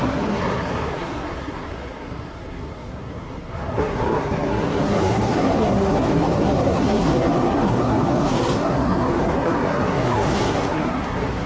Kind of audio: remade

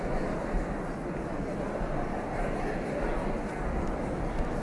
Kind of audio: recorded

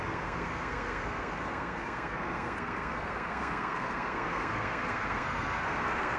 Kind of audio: remade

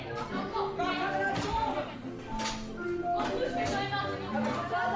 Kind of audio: recorded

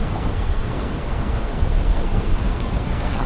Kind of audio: remade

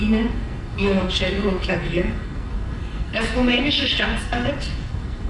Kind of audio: remade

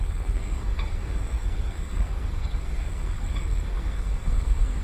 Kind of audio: remade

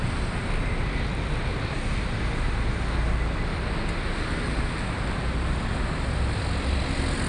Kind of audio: recorded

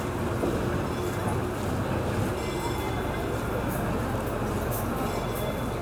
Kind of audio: recorded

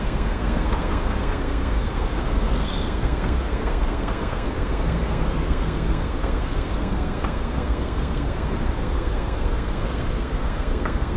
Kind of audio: remade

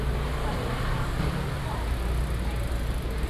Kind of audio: recorded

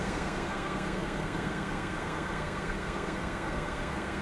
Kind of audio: remade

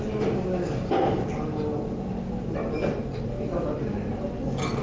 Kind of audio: recorded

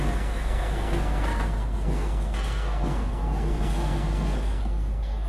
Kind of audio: remade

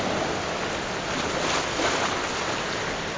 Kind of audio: recorded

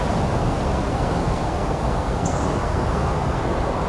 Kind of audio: remade